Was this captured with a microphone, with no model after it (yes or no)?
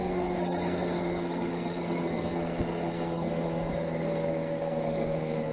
no